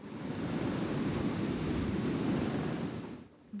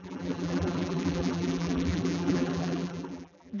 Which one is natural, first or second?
first